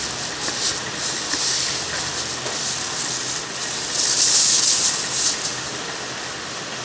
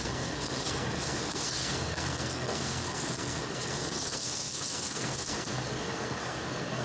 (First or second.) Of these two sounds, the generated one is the second